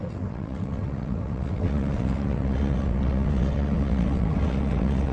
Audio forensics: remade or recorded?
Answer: remade